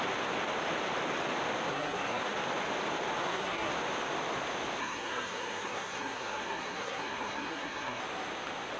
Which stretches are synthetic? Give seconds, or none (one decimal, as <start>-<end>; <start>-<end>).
1.7-2.2; 3.2-3.7; 4.8-8.0